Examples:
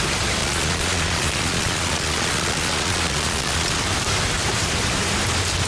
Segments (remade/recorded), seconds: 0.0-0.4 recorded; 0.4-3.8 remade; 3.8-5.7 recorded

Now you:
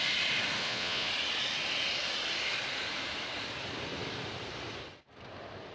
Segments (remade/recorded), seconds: 0.0-0.6 recorded; 0.6-1.1 remade; 1.1-5.7 recorded

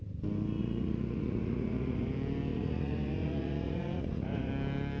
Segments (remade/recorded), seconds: 0.0-0.6 recorded; 0.6-2.1 remade; 2.1-2.5 recorded; 2.5-4.5 remade; 4.5-5.0 recorded

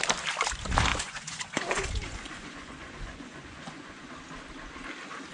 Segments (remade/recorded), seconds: 0.0-0.9 recorded; 0.9-4.1 remade; 4.1-5.3 recorded

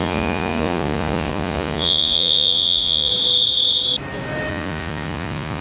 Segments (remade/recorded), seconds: 0.0-3.1 remade; 3.1-4.5 recorded; 4.5-5.6 remade

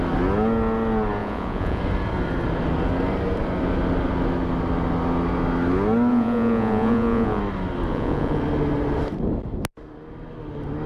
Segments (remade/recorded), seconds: 0.0-1.2 recorded; 1.2-1.8 remade; 1.8-6.1 recorded; 6.1-7.4 remade; 7.4-7.9 recorded; 7.9-8.4 remade; 8.4-10.9 recorded